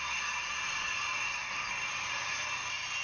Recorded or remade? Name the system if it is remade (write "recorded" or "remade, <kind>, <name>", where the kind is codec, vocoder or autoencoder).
recorded